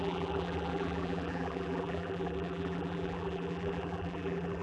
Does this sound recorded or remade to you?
remade